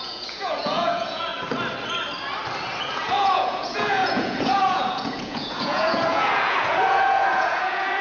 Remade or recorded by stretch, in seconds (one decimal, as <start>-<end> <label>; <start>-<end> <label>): 0.0-1.3 remade; 1.3-2.8 recorded; 2.8-8.0 remade